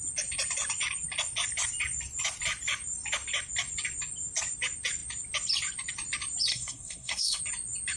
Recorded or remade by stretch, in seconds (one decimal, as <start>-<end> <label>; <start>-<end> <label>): 0.0-6.5 recorded; 6.5-7.4 remade; 7.4-8.0 recorded

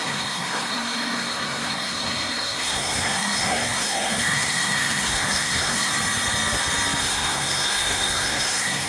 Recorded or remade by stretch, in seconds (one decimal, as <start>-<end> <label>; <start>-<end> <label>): 0.0-5.9 remade; 5.9-7.0 recorded; 7.0-8.9 remade